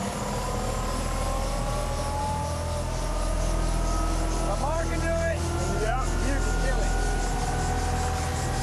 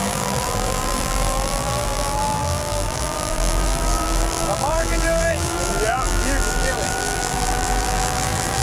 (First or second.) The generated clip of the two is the second